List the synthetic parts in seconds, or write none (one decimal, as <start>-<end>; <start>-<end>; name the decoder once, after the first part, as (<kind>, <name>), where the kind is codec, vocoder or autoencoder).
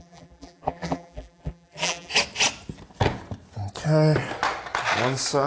0.0-2.1 (vocoder, BigVGAN v2)